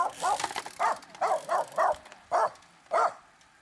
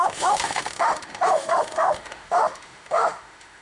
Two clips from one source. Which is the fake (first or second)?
second